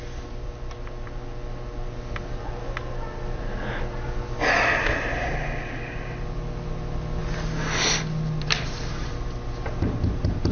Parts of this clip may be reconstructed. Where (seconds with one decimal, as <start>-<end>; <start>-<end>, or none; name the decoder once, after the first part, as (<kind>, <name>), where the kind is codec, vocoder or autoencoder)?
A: none